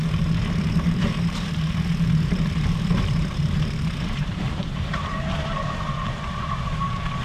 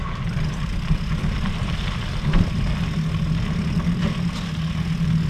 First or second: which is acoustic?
second